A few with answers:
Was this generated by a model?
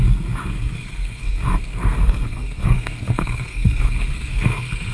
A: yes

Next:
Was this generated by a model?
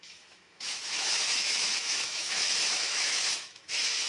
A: yes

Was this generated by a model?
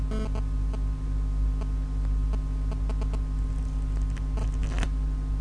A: no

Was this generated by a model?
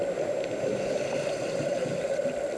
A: no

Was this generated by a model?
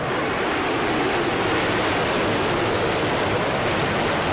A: no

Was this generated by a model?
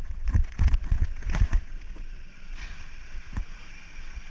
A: yes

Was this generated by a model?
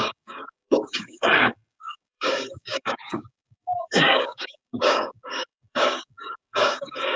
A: yes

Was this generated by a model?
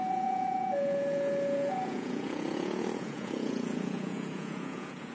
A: yes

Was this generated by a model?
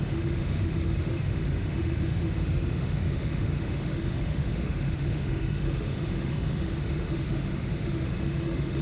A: yes